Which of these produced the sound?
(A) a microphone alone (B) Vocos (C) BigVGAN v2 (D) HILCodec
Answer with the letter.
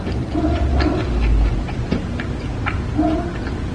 A